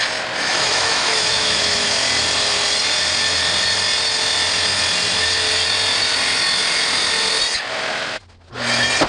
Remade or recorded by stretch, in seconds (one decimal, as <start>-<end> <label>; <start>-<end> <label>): 0.0-0.5 recorded; 0.5-1.9 remade; 1.9-9.1 recorded